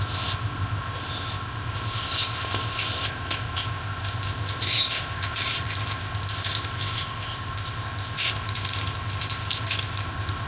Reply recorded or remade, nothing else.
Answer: remade